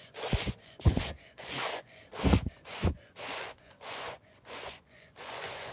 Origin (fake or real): fake